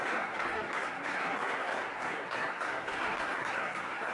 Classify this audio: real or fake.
fake